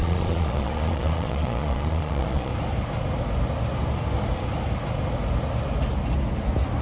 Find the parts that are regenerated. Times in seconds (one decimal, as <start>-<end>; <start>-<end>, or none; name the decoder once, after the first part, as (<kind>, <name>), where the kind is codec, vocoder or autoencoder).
0.0-2.5 (vocoder, Vocos)